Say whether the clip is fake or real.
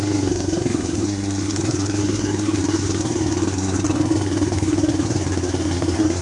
fake